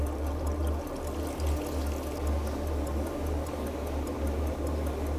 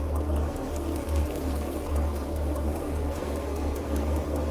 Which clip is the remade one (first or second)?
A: second